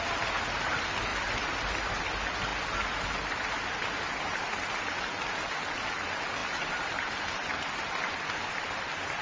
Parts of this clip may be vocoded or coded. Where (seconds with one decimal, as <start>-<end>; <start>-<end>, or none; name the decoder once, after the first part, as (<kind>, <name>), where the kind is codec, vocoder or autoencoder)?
1.1-2.0 (vocoder, BigVGAN v2); 6.4-6.9